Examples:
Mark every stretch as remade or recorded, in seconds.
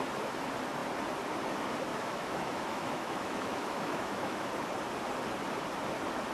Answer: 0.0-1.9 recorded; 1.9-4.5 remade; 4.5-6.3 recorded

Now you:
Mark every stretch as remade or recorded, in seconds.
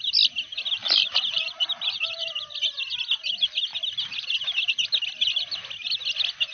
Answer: 0.0-0.8 recorded; 0.8-2.5 remade; 2.5-6.5 recorded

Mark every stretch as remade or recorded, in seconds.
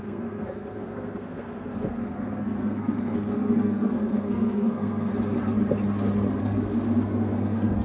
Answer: 0.0-5.1 remade; 5.1-6.4 recorded; 6.4-7.8 remade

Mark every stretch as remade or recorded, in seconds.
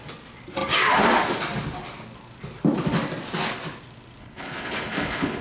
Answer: 0.0-4.2 recorded; 4.2-5.4 remade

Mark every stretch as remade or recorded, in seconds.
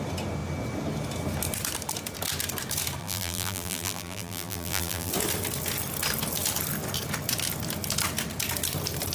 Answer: 0.0-3.0 recorded; 3.0-5.1 remade; 5.1-9.1 recorded